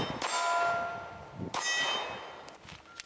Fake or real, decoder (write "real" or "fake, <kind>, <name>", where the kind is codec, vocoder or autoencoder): real